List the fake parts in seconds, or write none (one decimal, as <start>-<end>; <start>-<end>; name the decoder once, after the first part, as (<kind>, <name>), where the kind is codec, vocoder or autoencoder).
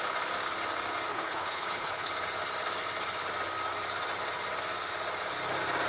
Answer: 1.1-2.1 (codec, HILCodec)